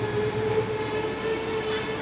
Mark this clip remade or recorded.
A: recorded